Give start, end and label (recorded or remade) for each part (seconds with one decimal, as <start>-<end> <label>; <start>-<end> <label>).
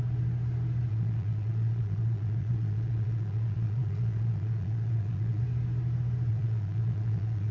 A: 0.0-0.9 recorded; 0.9-5.4 remade; 5.4-6.3 recorded; 6.3-7.5 remade